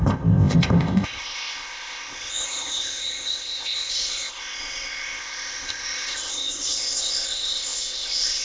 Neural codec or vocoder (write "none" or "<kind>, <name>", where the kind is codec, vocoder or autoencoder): codec, ZipCodec